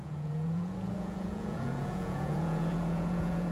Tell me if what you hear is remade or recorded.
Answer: remade